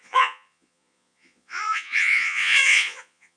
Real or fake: fake